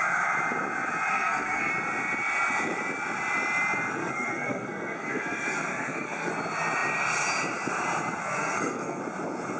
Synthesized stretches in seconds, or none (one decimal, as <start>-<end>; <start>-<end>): 1.1-1.7; 4.0-6.3; 8.2-9.0